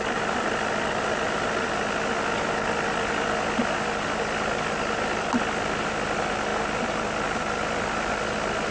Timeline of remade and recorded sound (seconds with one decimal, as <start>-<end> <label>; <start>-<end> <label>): 0.0-8.7 recorded